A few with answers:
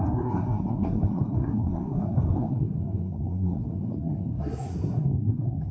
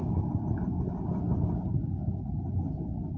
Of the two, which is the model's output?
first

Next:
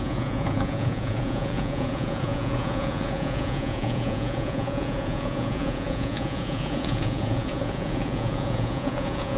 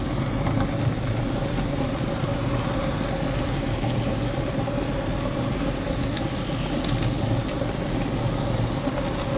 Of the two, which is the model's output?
first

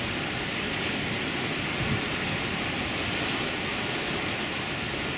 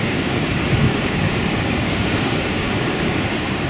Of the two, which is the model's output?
second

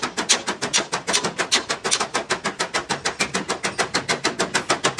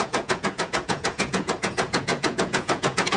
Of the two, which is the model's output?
second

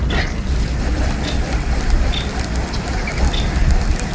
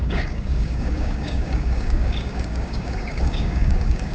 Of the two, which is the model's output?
second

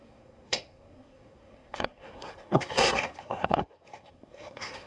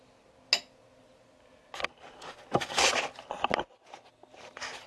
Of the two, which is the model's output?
first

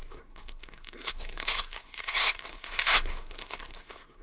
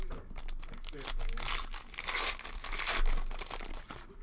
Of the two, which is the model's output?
first